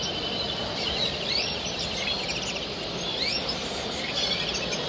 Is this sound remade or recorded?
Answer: remade